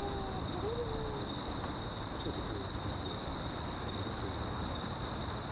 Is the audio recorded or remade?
recorded